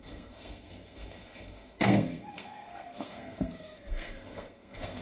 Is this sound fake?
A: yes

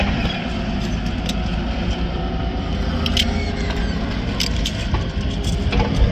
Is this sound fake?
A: no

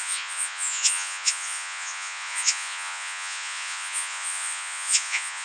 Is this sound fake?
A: yes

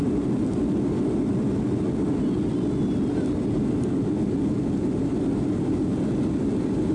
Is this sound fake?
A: no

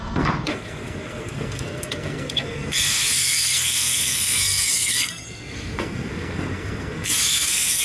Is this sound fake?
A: yes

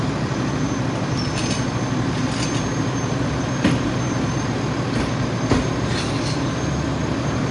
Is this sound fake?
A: no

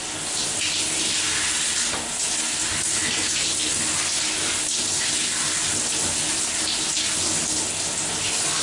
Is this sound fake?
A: no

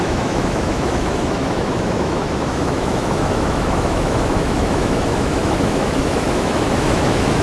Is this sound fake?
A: yes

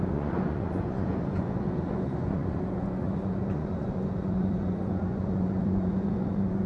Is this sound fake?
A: yes